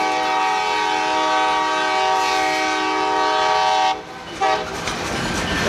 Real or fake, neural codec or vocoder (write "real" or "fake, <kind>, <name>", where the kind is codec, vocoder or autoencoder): real